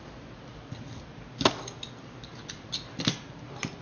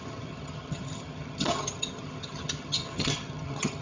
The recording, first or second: first